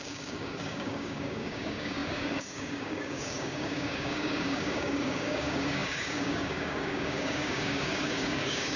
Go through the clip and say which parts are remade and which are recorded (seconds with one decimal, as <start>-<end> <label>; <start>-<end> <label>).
0.0-8.8 remade